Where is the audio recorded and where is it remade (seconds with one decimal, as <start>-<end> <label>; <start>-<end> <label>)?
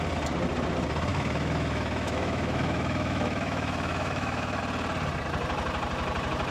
0.0-1.1 recorded; 1.1-4.6 remade; 4.6-6.5 recorded